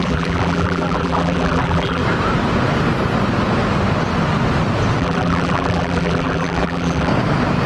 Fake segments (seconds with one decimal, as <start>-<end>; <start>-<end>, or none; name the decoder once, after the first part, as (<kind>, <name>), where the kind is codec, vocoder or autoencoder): 0.0-2.0 (vocoder, BigVGAN v2); 5.0-7.1